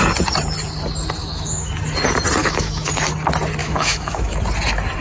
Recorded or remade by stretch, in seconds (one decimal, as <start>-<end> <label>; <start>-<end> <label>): 0.0-1.2 recorded; 1.2-1.7 remade; 1.7-2.4 recorded; 2.4-2.9 remade; 2.9-3.6 recorded; 3.6-4.4 remade; 4.4-5.0 recorded